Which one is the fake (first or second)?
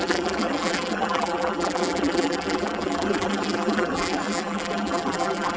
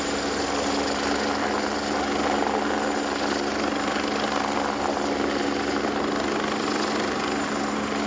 first